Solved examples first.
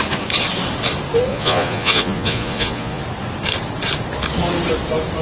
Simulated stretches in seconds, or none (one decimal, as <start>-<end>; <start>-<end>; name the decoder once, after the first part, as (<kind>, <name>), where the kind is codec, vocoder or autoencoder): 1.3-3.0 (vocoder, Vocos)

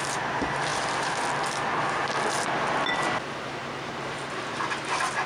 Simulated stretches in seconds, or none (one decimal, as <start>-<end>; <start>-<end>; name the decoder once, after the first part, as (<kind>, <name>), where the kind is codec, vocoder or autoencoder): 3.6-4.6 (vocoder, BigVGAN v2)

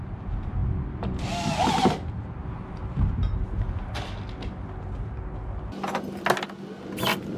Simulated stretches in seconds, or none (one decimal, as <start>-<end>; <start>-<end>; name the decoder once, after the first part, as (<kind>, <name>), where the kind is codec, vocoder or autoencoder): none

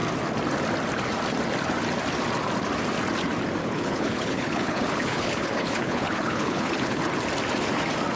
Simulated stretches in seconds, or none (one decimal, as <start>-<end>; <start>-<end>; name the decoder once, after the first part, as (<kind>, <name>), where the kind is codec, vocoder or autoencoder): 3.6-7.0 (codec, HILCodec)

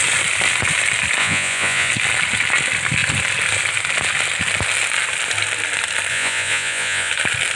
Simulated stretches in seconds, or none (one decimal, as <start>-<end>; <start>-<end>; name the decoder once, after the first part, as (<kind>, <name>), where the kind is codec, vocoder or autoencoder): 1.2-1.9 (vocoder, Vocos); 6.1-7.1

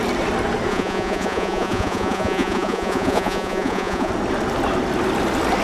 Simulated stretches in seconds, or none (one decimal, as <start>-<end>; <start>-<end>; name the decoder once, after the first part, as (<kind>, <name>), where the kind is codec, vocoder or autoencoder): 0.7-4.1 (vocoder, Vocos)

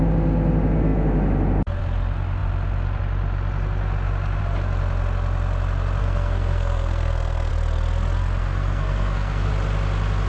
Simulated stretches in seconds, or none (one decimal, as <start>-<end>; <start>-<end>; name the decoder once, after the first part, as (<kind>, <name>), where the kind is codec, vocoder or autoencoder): 6.0-7.5 (codec, SNAC); 8.4-9.5